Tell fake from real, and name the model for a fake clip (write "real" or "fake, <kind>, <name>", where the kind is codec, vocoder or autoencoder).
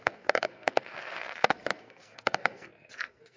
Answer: fake, codec, SNAC